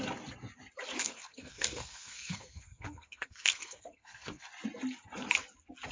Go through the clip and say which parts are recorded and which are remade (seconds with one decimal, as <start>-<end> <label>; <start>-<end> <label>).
0.0-1.0 recorded; 1.0-4.5 remade; 4.5-5.9 recorded